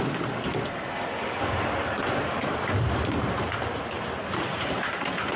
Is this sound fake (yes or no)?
yes